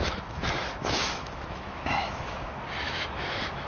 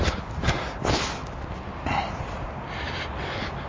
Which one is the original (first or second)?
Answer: second